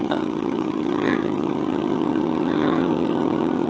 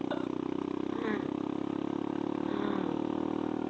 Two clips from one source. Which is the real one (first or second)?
second